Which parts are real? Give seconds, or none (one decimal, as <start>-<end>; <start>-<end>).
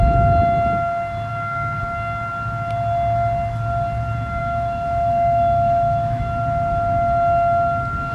0.0-1.3; 1.8-4.4; 6.2-8.1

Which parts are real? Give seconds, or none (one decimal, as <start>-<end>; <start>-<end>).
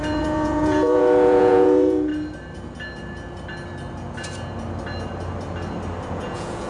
2.1-6.1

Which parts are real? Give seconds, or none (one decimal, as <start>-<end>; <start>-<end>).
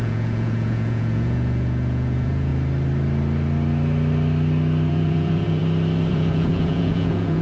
2.5-4.9; 5.6-6.1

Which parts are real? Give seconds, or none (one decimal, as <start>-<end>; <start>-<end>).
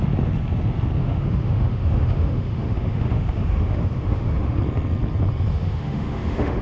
0.0-1.0; 4.6-5.5